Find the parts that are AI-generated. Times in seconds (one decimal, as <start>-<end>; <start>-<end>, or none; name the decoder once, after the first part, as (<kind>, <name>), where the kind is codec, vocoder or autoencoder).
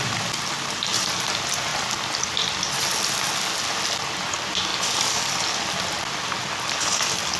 0.0-7.4 (vocoder, BigVGAN v2)